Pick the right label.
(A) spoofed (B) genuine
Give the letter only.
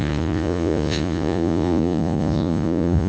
A